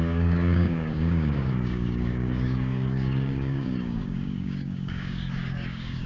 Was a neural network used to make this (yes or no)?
yes